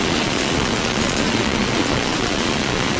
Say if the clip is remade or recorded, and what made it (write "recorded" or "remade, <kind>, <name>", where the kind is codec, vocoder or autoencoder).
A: remade, vocoder, Vocos